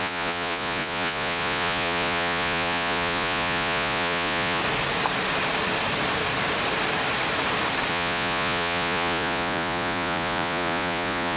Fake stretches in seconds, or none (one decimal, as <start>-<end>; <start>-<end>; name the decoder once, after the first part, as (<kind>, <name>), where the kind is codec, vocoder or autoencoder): 0.0-4.6 (vocoder, Vocos); 7.9-11.4